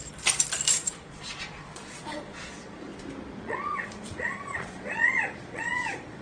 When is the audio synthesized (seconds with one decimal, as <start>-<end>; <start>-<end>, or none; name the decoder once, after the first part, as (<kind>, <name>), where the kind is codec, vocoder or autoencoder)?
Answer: 0.7-2.9 (vocoder, Vocos); 3.4-6.2